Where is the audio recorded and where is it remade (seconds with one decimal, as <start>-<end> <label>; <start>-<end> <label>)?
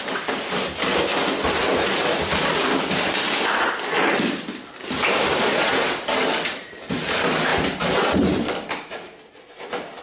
0.0-1.7 recorded; 1.7-6.9 remade; 6.9-7.5 recorded; 7.5-8.7 remade; 8.7-10.0 recorded